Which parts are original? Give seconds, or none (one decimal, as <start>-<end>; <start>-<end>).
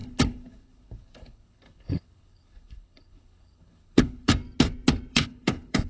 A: 4.3-5.1